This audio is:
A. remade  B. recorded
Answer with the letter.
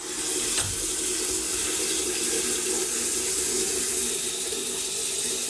B